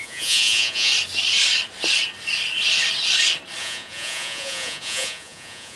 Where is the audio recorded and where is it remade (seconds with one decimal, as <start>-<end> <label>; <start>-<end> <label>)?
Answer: 0.0-0.9 remade; 0.9-3.6 recorded; 3.6-5.8 remade